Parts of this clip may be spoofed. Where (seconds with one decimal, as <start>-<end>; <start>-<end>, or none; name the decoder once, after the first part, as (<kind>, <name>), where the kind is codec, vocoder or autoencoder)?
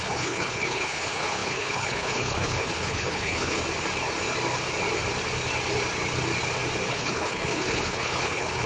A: 0.0-3.6 (codec, HILCodec); 6.9-8.7